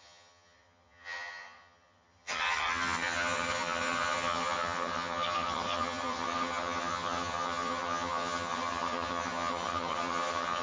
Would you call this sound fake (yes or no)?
yes